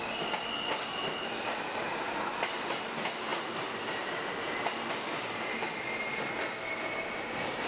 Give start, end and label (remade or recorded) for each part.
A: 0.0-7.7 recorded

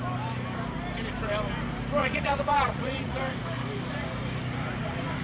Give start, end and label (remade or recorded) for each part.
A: 0.0-2.0 recorded; 2.0-3.2 remade; 3.2-5.2 recorded

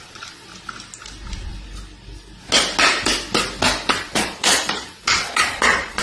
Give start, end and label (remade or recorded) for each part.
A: 0.0-0.5 remade; 0.5-4.1 recorded; 4.1-6.0 remade

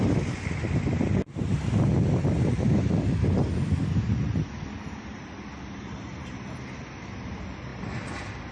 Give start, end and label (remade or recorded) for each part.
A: 0.0-8.5 recorded

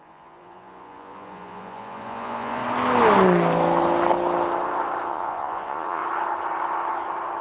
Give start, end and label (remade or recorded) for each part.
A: 0.0-2.6 remade; 2.6-5.1 recorded; 5.1-6.0 remade; 6.0-7.4 recorded